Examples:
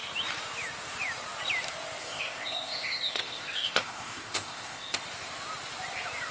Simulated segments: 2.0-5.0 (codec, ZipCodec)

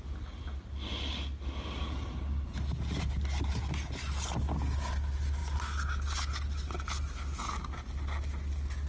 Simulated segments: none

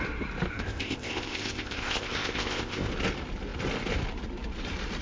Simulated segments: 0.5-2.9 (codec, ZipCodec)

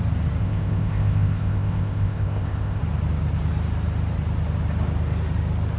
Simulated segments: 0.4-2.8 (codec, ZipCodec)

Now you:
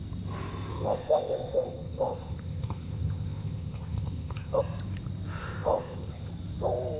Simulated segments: 0.7-4.6 (codec, ZipCodec); 5.4-6.3

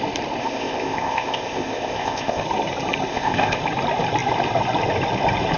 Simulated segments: 0.4-2.4 (codec, ZipCodec); 3.1-3.6

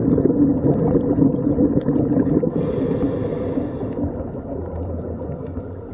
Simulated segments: none

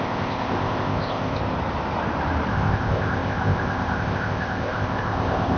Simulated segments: 0.0-1.4 (codec, ZipCodec); 2.5-5.6